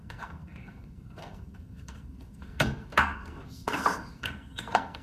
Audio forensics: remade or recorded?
remade